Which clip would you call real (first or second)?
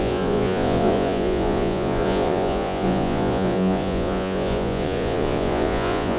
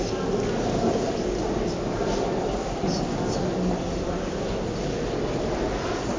second